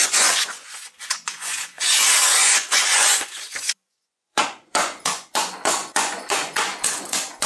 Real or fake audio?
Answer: fake